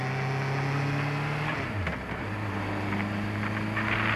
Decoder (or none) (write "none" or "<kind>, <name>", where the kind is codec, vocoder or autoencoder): none